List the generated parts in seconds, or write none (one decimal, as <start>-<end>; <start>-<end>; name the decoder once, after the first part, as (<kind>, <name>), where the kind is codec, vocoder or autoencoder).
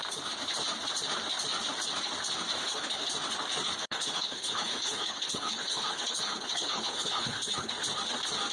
2.6-3.1 (codec, HILCodec); 3.8-7.7